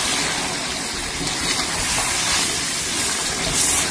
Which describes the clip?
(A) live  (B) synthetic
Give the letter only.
A